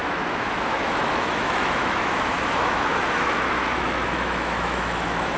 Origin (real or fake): fake